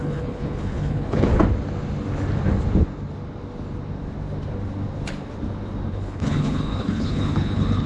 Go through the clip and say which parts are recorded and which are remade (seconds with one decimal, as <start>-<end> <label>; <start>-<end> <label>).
0.0-1.3 remade; 1.3-5.9 recorded; 5.9-7.9 remade